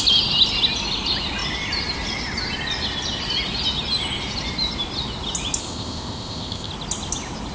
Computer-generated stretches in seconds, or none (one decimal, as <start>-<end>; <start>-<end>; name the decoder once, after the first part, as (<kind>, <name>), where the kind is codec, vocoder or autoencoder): 5.6-6.7 (codec, ZipCodec)